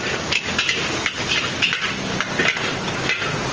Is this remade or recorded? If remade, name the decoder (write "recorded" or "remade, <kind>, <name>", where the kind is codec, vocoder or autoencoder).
recorded